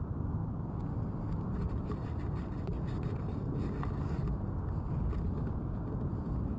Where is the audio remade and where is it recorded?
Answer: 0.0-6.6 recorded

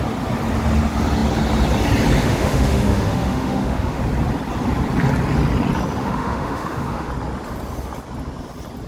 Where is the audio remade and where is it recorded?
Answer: 0.0-2.2 recorded; 2.2-4.0 remade; 4.0-6.0 recorded; 6.0-7.1 remade; 7.1-8.9 recorded